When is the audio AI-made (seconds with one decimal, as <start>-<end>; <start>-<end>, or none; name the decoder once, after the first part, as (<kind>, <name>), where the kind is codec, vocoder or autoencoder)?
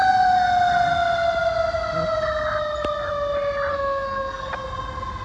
3.7-4.5 (codec, SNAC)